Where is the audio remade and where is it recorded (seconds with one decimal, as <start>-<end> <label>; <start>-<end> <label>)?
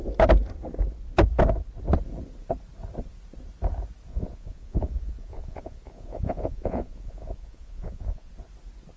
0.0-4.1 recorded; 4.1-8.3 remade; 8.3-9.0 recorded